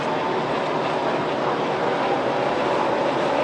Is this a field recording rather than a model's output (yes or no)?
yes